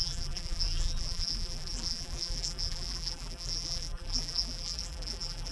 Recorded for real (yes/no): no